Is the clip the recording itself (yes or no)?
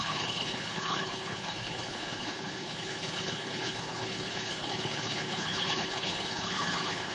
no